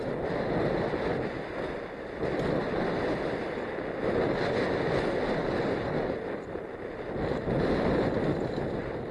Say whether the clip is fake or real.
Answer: real